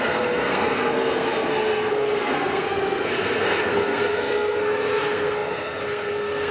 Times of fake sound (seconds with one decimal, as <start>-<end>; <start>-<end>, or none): 0.0-6.5